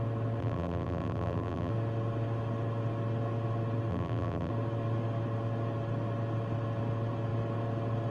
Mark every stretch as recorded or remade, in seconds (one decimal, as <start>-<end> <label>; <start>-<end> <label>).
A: 0.0-0.4 recorded; 0.4-1.7 remade; 1.7-3.9 recorded; 3.9-4.5 remade; 4.5-8.1 recorded

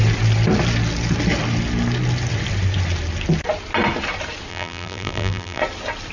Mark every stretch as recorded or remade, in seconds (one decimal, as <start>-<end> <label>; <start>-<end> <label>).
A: 0.0-4.5 recorded; 4.5-5.6 remade; 5.6-6.1 recorded

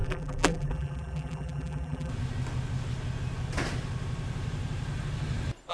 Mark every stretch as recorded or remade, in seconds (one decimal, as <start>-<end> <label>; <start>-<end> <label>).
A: 0.0-2.1 remade; 2.1-5.7 recorded